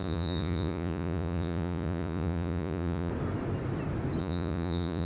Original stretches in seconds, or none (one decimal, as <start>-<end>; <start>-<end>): 3.1-4.2